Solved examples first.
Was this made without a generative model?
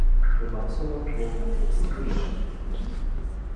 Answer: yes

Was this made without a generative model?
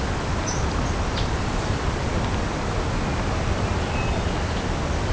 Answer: yes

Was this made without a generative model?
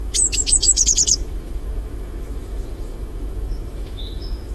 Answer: no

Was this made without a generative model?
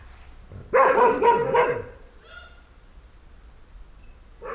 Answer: yes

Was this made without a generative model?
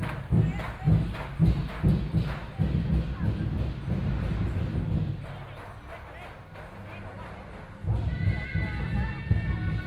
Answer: yes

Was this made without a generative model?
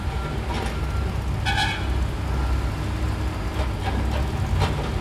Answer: yes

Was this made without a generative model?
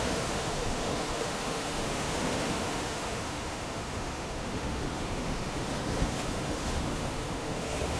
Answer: no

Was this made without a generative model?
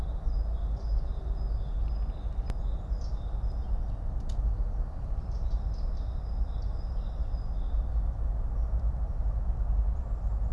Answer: yes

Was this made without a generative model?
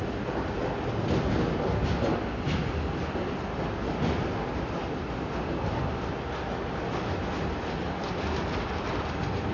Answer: yes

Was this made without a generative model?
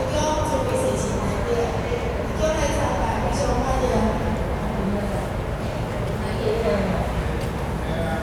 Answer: yes